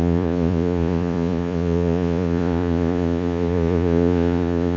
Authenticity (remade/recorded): remade